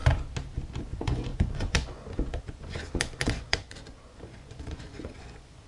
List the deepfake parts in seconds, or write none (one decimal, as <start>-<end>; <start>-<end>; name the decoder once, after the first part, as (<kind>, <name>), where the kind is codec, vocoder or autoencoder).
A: 0.8-5.7 (vocoder, Vocos)